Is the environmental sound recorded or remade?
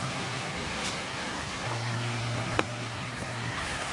remade